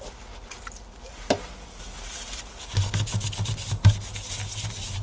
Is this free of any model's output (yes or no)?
yes